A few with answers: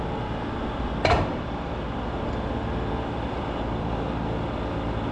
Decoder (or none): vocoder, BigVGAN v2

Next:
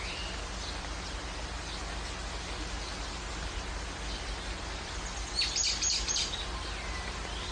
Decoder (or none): none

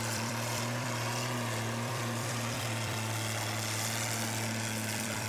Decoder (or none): vocoder, BigVGAN v2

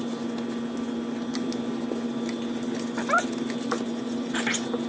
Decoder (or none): none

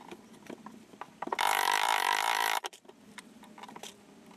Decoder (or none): none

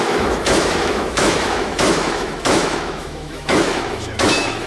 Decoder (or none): autoencoder, DAC-VAE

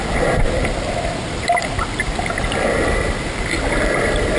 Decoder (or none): none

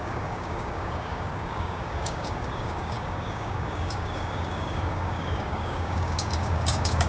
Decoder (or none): codec, DAC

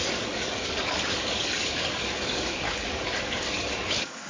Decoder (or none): codec, DAC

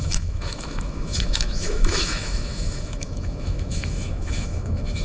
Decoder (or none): autoencoder, DAC-VAE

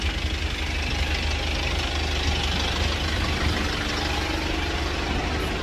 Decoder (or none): none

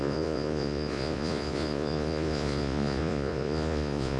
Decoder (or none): vocoder, Vocos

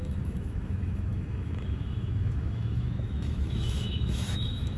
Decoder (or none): autoencoder, DAC-VAE